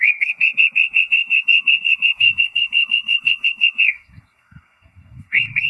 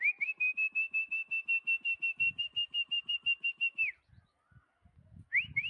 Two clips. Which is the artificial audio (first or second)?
first